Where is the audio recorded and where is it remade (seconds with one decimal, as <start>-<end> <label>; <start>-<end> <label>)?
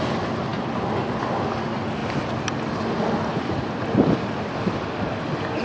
0.0-3.3 recorded; 3.3-4.5 remade; 4.5-5.6 recorded